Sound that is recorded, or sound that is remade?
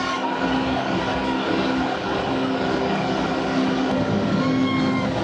remade